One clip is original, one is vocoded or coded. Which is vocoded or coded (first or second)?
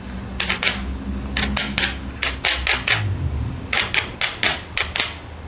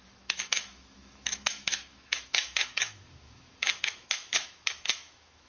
second